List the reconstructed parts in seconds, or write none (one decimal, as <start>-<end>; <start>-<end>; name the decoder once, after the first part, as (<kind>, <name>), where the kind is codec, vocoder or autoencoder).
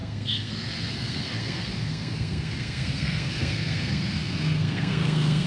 0.0-5.5 (codec, SNAC)